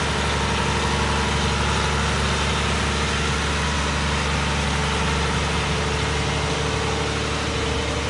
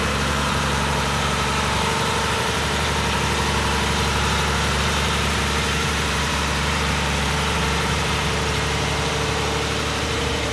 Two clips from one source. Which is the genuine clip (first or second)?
first